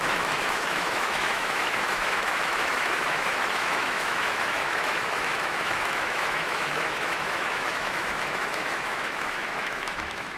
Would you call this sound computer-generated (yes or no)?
yes